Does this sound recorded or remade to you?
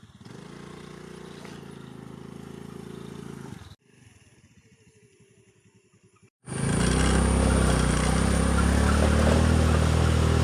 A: recorded